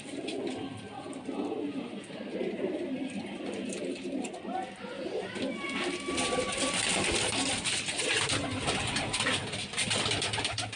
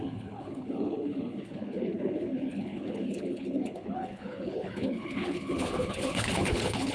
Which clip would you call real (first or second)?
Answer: first